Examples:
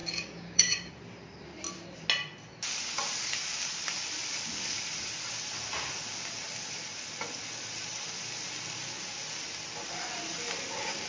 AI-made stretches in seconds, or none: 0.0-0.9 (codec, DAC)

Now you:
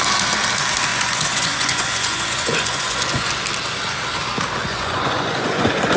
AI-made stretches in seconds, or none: 0.9-3.3 (vocoder, Vocos); 4.6-6.0

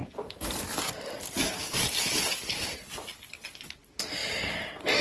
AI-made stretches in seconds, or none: 0.0-2.8 (vocoder, BigVGAN v2)

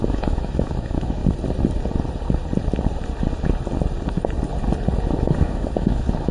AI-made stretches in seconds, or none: 0.0-1.2 (autoencoder, DAC-VAE); 5.0-6.3